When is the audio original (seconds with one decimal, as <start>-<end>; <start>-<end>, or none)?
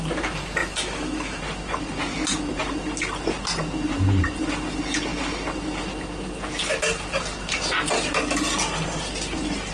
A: 0.0-0.6; 1.4-9.7